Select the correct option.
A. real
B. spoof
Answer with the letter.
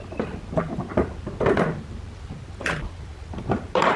A